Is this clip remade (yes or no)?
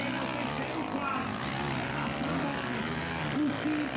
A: no